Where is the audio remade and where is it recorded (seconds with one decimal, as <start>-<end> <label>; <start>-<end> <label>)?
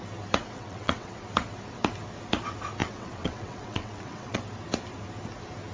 0.0-0.4 recorded; 0.4-1.2 remade; 1.2-2.8 recorded; 2.8-4.4 remade; 4.4-5.7 recorded